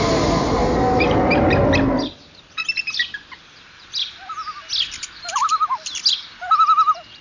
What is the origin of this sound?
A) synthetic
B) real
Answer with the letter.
B